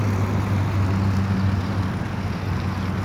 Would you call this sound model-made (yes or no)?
no